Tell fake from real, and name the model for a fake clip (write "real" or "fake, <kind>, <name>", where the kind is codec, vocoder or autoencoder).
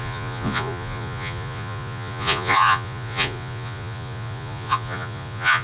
fake, vocoder, Vocos